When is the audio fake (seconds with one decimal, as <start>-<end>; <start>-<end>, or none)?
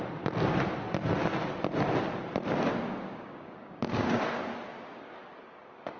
2.9-4.2; 4.7-6.0